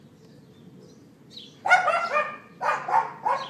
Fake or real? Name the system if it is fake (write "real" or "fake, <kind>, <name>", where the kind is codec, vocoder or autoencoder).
real